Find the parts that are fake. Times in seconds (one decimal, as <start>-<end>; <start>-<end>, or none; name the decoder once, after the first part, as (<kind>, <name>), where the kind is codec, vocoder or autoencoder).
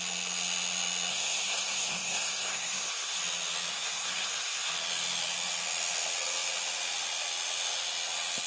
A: 1.1-3.2 (codec, SNAC); 3.7-4.7